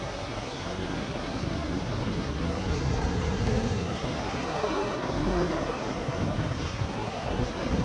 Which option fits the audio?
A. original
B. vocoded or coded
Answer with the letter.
B